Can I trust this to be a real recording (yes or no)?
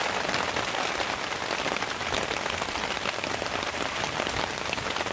yes